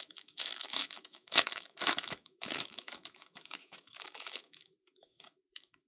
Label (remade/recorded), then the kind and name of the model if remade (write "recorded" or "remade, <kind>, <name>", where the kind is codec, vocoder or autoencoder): remade, autoencoder, DAC-VAE